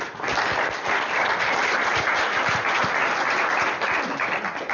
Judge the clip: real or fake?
real